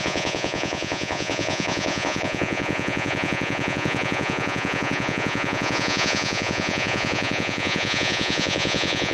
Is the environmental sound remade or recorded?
remade